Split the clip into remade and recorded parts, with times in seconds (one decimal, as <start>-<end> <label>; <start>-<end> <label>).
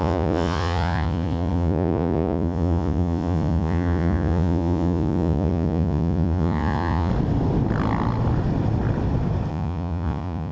0.0-7.1 remade; 7.1-9.5 recorded; 9.5-10.5 remade